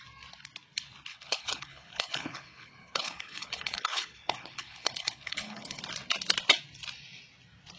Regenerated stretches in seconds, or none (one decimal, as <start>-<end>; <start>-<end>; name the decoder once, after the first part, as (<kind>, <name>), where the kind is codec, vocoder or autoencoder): 1.1-5.8 (codec, HILCodec)